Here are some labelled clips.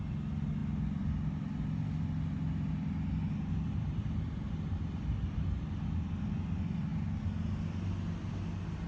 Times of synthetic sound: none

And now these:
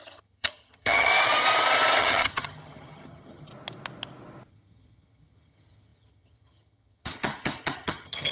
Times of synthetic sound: 0.0-1.1 (vocoder, HiFi-GAN); 2.0-3.5; 4.5-8.3

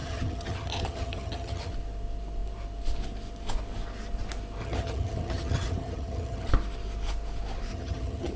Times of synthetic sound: 0.0-1.7 (vocoder, HiFi-GAN); 4.6-6.5; 7.7-8.4